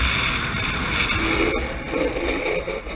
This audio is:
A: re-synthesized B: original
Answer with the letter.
B